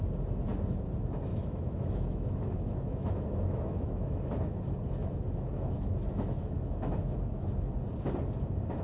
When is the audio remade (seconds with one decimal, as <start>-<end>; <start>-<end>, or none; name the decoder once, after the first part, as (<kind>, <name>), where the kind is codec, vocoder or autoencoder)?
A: 1.3-4.6 (autoencoder, DAC-VAE); 5.0-7.7